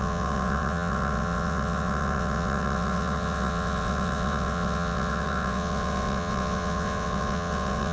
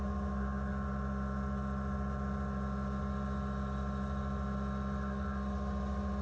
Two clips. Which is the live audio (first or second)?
second